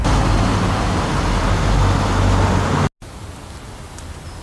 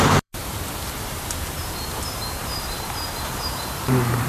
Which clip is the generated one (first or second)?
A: second